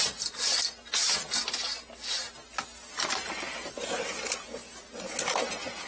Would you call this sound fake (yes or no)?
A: no